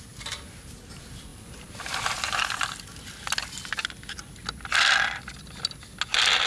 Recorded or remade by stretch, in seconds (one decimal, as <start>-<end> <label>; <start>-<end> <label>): 0.0-6.5 recorded